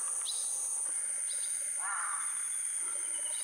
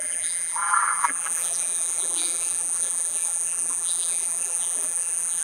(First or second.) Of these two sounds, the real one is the first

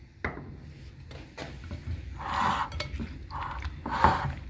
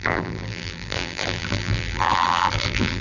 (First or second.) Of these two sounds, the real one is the first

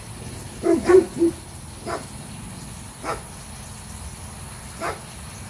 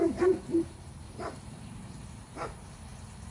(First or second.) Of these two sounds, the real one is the first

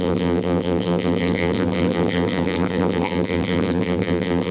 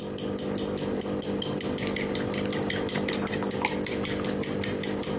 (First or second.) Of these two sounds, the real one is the second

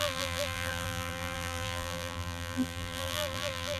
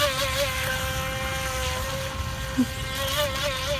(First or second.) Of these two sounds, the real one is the second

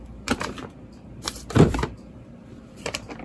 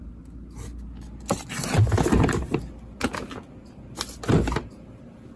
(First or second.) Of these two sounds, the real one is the second